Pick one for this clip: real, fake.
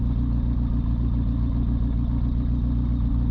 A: real